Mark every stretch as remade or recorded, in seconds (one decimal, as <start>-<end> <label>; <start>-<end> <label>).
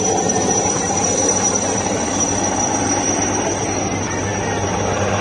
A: 0.0-4.3 remade; 4.3-5.2 recorded